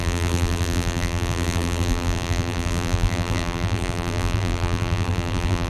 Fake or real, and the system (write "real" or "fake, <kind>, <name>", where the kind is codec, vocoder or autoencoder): fake, vocoder, BigVGAN v2